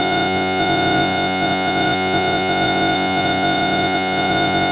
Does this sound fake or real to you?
fake